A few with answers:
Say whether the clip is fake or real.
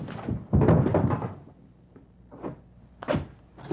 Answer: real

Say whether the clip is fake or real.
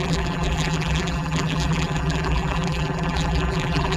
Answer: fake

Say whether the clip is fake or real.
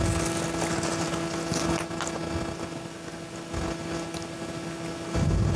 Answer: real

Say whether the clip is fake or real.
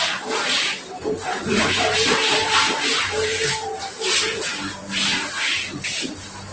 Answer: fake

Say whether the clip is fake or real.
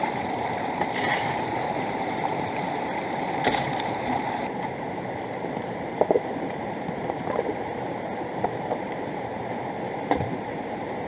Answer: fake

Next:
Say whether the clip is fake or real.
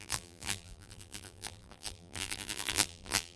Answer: fake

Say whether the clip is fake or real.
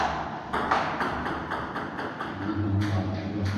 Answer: real